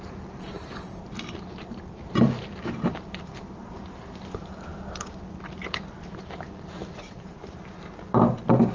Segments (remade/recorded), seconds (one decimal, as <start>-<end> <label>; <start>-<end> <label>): 0.0-4.7 remade; 4.7-6.7 recorded; 6.7-8.7 remade